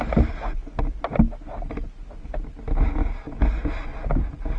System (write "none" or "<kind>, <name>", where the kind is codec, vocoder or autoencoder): none